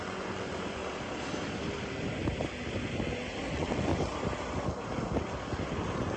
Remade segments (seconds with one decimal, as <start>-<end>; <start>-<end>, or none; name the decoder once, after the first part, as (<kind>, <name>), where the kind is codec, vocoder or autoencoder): 0.0-0.8 (vocoder, Vocos); 3.5-3.9